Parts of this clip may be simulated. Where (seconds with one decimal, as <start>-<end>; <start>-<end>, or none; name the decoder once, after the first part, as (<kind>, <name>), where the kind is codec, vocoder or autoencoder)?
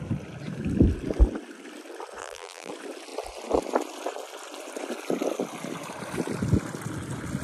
2.2-2.7 (vocoder, BigVGAN v2)